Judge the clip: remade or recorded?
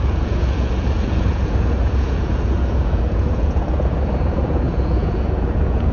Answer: remade